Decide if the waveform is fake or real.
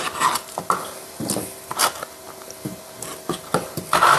real